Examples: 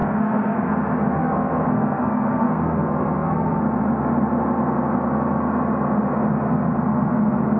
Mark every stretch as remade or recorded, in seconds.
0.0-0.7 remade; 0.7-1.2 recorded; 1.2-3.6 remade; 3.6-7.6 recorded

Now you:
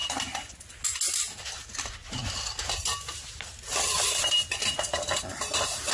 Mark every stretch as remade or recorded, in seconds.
0.0-5.9 recorded

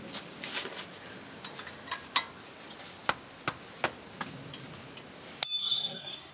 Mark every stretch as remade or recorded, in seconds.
0.0-5.6 recorded; 5.6-6.3 remade